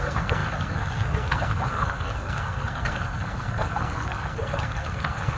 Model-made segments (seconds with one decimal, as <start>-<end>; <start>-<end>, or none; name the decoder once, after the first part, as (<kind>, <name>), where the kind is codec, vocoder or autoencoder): 0.0-5.4 (codec, SNAC)